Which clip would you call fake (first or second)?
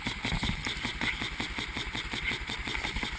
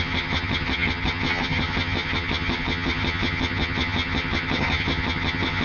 second